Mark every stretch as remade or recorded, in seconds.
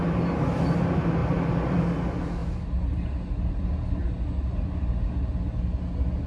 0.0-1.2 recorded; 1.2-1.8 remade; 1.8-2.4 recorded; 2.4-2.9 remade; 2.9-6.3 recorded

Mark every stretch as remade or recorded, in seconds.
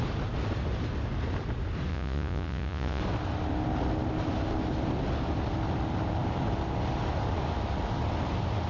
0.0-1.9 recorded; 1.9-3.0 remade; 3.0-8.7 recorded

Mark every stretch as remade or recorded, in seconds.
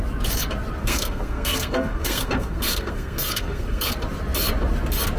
0.0-0.8 recorded; 0.8-3.9 remade; 3.9-5.2 recorded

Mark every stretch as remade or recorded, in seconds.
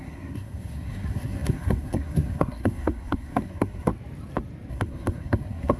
0.0-3.9 remade; 3.9-4.7 recorded; 4.7-5.8 remade